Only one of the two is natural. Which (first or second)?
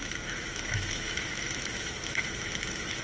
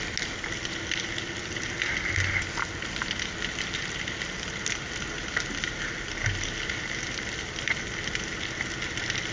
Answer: second